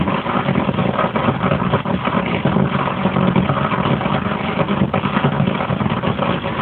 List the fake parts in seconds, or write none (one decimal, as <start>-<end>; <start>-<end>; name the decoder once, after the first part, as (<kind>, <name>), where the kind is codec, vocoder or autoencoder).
none